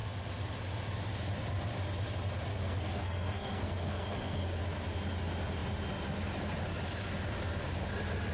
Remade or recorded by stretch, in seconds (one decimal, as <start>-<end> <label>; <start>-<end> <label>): 0.0-2.5 recorded; 2.5-4.6 remade; 4.6-8.3 recorded